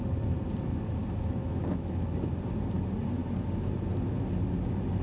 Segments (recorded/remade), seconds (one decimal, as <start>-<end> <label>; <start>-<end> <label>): 0.0-1.4 recorded; 1.4-2.3 remade; 2.3-5.0 recorded